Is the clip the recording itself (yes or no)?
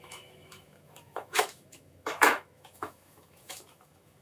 no